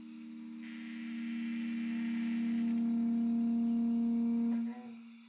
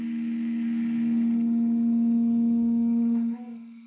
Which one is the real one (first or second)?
first